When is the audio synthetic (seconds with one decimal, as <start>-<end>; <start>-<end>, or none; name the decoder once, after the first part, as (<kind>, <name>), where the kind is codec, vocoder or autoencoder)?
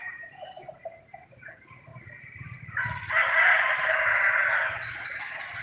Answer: 0.0-0.5 (vocoder, Vocos)